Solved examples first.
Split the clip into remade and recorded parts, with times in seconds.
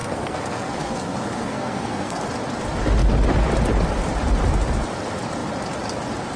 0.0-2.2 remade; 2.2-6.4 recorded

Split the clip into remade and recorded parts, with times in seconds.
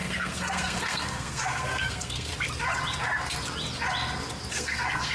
0.0-2.3 remade; 2.3-4.5 recorded; 4.5-5.1 remade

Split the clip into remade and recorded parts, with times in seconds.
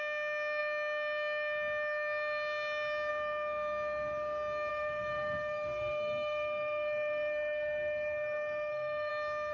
0.0-4.7 recorded; 4.7-9.1 remade; 9.1-9.5 recorded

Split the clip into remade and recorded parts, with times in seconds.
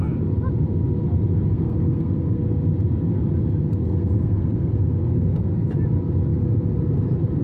0.0-1.5 recorded; 1.5-2.4 remade; 2.4-3.8 recorded; 3.8-5.4 remade; 5.4-7.4 recorded